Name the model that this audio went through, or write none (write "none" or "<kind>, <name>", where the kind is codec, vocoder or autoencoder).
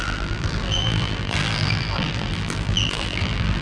vocoder, BigVGAN v2